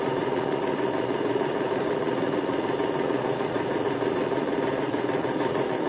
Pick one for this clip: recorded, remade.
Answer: remade